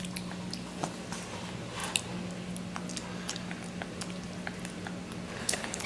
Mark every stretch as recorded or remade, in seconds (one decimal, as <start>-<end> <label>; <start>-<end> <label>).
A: 0.0-5.4 recorded; 5.4-5.9 remade